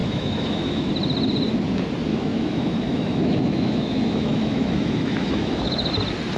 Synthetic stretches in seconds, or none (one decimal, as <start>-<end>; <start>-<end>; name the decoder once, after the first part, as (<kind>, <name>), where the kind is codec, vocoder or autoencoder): 0.0-0.9 (autoencoder, DAC-VAE); 2.1-5.9